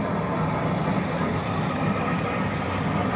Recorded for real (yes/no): yes